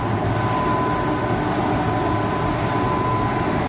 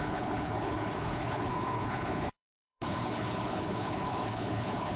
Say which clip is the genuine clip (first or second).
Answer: first